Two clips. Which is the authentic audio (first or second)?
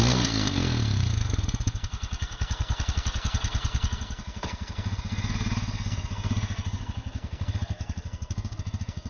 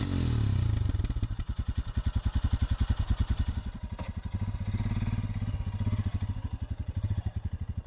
second